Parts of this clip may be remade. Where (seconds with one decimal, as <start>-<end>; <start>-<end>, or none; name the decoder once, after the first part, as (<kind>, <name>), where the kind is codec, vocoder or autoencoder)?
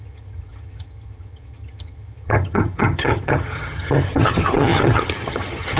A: 0.0-5.8 (vocoder, HiFi-GAN)